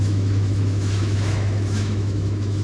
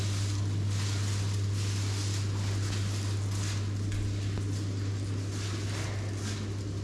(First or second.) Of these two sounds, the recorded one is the second